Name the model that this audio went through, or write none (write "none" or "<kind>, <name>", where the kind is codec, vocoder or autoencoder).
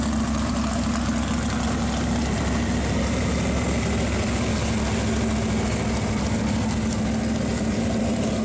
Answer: none